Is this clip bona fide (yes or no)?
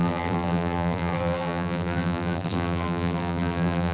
no